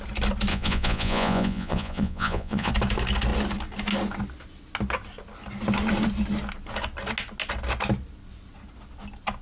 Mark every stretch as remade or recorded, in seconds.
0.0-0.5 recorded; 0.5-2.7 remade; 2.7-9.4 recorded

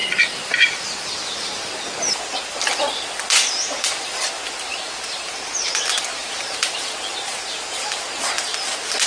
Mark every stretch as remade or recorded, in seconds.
0.0-4.7 recorded; 4.7-5.8 remade; 5.8-6.2 recorded; 6.2-8.0 remade; 8.0-9.1 recorded

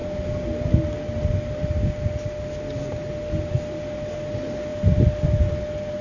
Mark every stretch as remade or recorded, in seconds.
0.0-6.0 recorded